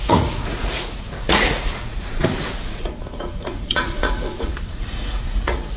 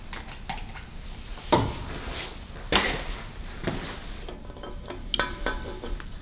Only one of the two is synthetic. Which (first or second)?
first